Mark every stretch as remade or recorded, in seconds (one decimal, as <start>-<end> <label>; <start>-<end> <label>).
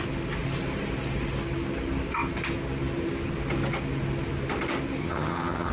0.0-5.0 recorded; 5.0-5.7 remade